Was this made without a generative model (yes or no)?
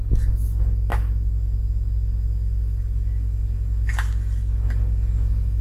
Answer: yes